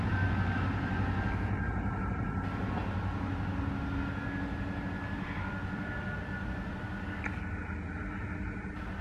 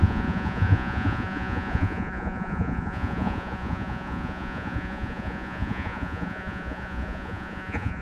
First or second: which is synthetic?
second